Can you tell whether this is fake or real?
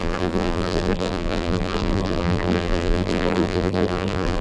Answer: fake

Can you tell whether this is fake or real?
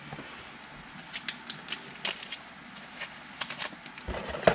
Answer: real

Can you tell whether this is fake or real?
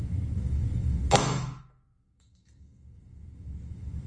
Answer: fake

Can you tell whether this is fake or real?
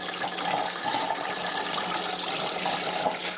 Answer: real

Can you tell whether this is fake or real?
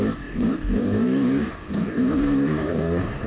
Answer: fake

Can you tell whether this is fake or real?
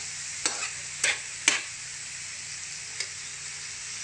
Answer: real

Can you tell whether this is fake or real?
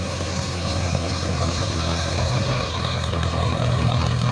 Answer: fake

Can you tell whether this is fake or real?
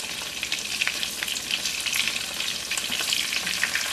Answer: real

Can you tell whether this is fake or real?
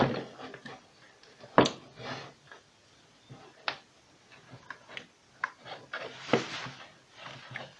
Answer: real